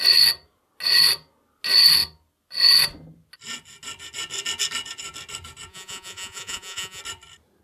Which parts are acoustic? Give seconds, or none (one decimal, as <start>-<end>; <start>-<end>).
0.0-5.7; 7.0-7.6